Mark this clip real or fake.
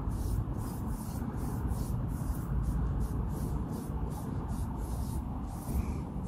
real